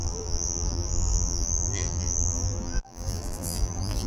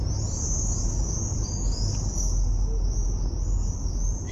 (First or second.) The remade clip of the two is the first